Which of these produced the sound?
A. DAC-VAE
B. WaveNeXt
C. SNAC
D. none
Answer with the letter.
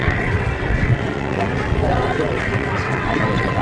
B